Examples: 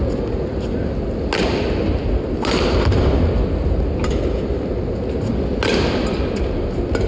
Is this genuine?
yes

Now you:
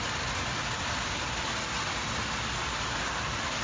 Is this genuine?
yes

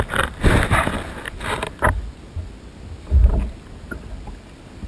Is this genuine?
yes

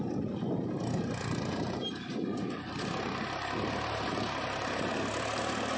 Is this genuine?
yes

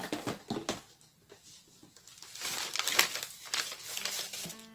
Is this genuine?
yes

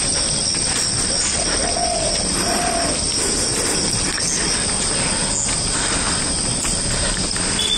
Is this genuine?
yes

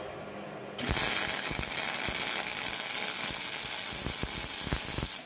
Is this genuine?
yes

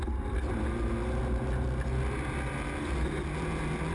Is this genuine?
yes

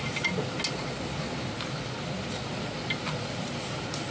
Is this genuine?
yes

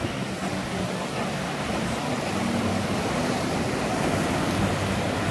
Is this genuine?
yes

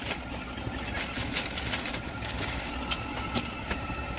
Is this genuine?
yes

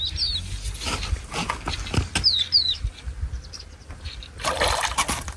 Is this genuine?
yes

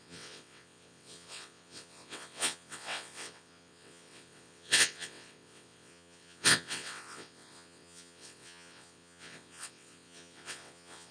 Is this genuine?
no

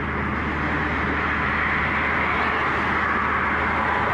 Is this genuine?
yes